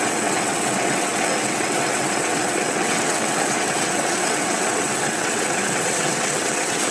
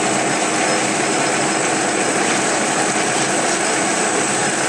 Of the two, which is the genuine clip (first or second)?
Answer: second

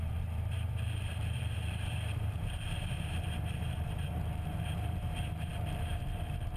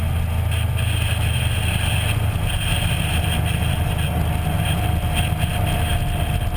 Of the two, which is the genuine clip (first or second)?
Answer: second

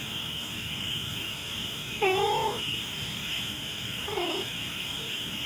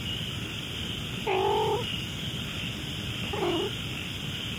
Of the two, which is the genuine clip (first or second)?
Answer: second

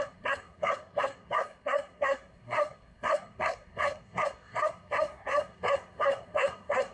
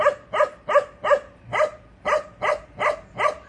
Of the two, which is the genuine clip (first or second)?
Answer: second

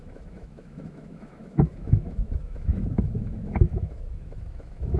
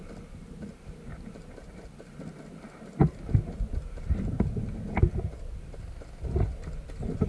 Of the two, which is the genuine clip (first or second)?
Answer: second